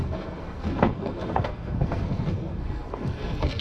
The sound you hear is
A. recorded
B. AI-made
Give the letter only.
B